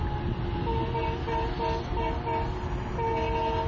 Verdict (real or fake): real